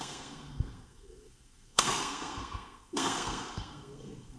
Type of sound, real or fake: fake